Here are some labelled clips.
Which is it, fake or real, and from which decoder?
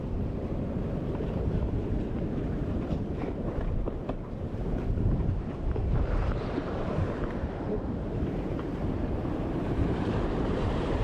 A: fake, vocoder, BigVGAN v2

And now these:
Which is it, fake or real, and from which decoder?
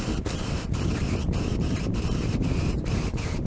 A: fake, vocoder, BigVGAN v2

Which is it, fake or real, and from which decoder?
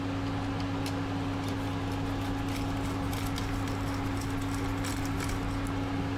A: real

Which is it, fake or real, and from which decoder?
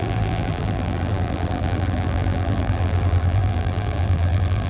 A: fake, vocoder, BigVGAN v2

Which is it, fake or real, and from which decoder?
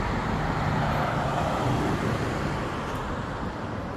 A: fake, vocoder, BigVGAN v2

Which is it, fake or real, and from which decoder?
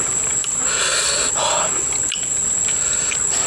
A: real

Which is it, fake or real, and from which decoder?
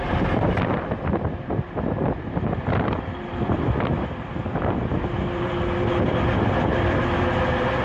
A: fake, vocoder, BigVGAN v2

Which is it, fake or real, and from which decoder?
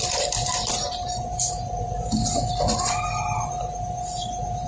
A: fake, vocoder, BigVGAN v2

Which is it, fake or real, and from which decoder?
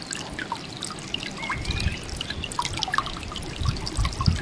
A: real